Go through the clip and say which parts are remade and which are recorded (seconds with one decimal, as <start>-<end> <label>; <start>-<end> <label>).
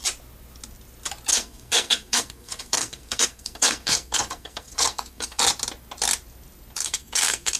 0.0-1.3 recorded; 1.3-5.4 remade; 5.4-6.8 recorded; 6.8-7.6 remade